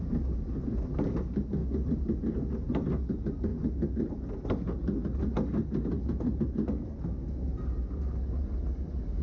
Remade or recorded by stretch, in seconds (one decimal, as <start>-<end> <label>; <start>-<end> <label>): 0.0-9.2 recorded